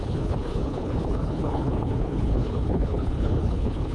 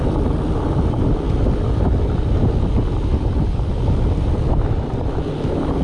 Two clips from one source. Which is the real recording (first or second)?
second